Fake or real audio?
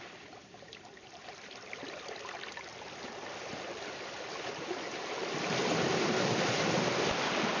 real